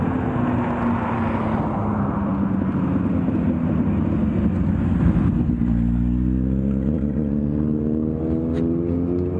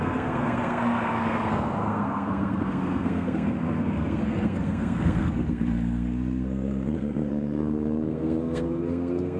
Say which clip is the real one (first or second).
first